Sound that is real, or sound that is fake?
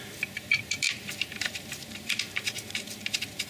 fake